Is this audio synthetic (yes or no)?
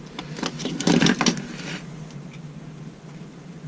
no